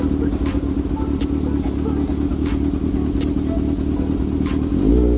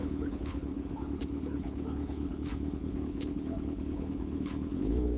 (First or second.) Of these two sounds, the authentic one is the first